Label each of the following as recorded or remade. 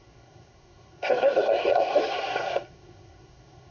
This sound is remade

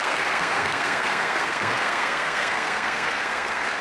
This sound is remade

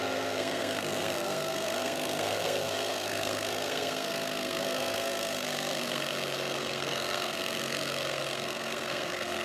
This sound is remade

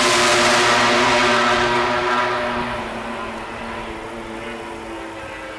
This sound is recorded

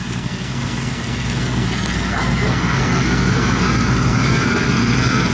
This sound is remade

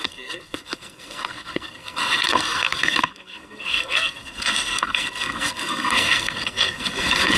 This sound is remade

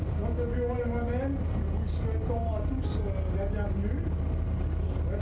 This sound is recorded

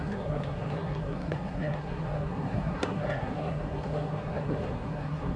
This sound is remade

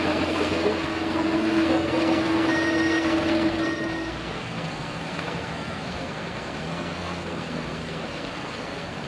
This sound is remade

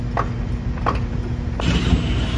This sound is recorded